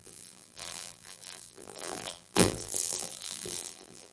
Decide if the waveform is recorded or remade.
remade